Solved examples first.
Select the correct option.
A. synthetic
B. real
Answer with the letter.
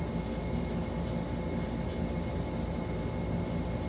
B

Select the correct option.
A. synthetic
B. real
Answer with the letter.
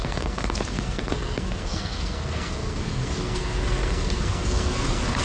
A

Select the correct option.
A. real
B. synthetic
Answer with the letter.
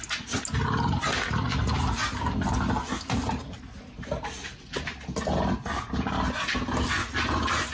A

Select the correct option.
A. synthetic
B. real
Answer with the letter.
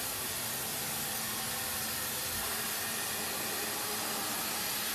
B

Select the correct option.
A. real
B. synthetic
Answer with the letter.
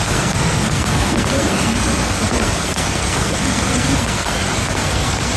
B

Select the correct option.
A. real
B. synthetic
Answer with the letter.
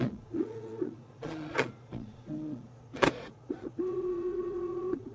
B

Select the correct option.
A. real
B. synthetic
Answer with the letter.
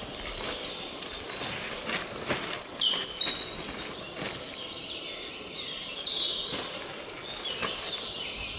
A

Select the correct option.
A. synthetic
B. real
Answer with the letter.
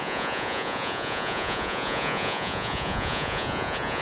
A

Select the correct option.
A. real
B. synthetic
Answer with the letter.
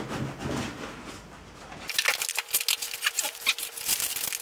A